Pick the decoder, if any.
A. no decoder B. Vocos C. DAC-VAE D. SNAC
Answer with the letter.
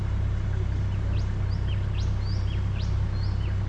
A